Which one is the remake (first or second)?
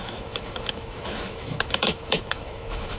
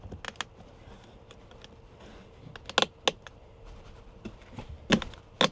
first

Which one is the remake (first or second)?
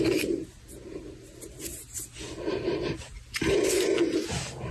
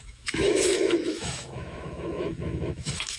second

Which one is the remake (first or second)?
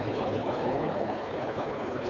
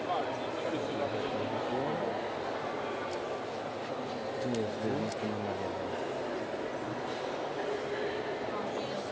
first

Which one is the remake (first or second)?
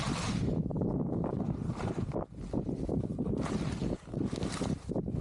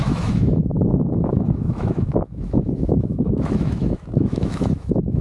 second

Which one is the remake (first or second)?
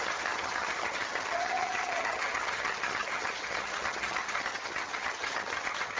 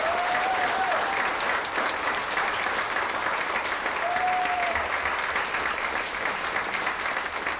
first